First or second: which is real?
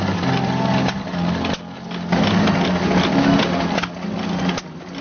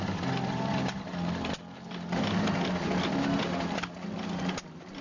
first